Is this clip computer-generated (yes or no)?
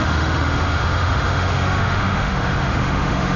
yes